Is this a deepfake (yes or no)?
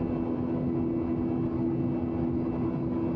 no